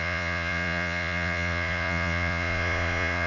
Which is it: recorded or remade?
remade